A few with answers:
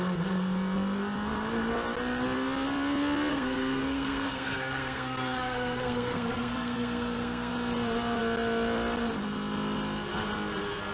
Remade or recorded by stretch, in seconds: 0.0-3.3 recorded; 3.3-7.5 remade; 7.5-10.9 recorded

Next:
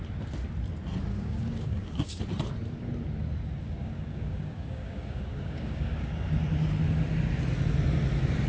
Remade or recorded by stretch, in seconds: 0.0-1.1 recorded; 1.1-2.2 remade; 2.2-3.6 recorded; 3.6-6.1 remade; 6.1-8.5 recorded

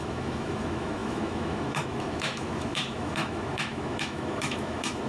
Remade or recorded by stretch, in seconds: 0.0-5.1 remade

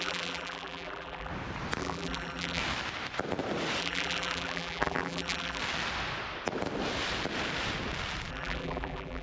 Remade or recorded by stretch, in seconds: 0.0-1.3 remade; 1.3-1.8 recorded; 1.8-2.6 remade; 2.6-3.8 recorded; 3.8-5.6 remade; 5.6-8.3 recorded; 8.3-9.2 remade

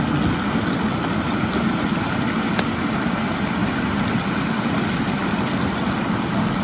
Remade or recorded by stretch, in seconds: 0.0-6.6 recorded

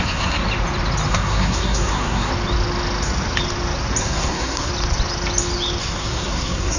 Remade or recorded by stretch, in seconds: 0.0-0.4 remade; 0.4-1.1 recorded; 1.1-2.3 remade; 2.3-4.0 recorded; 4.0-4.7 remade; 4.7-5.8 recorded; 5.8-6.8 remade